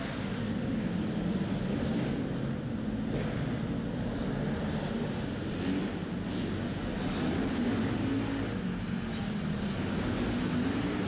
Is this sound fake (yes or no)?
no